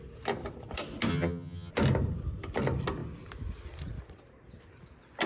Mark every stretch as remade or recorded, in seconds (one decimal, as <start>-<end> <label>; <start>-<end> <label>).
0.0-1.1 recorded; 1.1-1.7 remade; 1.7-5.3 recorded